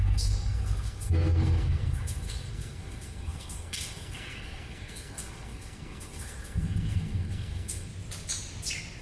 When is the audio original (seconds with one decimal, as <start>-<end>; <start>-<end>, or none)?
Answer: 7.9-9.0